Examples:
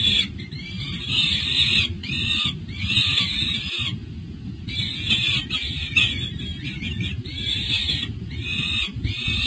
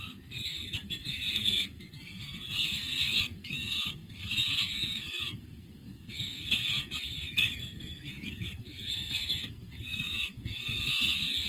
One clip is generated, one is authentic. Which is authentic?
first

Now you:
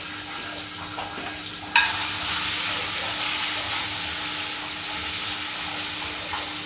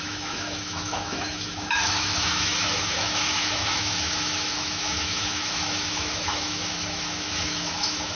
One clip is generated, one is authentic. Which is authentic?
first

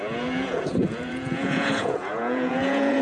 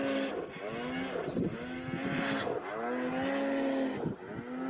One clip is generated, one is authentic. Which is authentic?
second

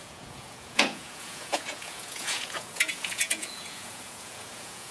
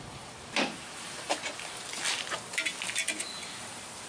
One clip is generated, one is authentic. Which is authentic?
second